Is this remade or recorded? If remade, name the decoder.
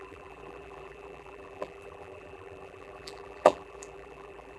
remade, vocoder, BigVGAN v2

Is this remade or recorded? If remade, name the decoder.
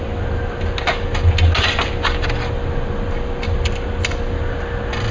recorded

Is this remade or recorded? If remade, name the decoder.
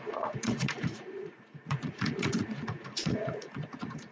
remade, vocoder, Vocos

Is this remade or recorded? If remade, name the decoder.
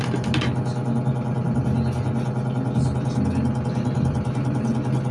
recorded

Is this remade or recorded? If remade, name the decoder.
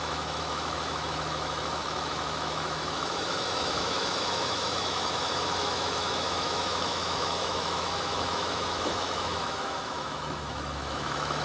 remade, autoencoder, DAC-VAE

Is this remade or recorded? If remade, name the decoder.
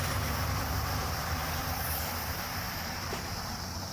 remade, vocoder, BigVGAN v2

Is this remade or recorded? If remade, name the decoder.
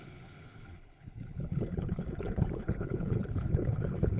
remade, codec, HILCodec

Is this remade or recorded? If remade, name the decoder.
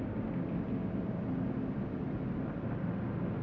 recorded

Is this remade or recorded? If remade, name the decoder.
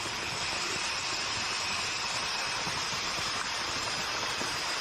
recorded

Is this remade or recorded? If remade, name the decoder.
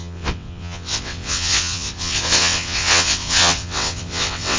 remade, vocoder, WaveNeXt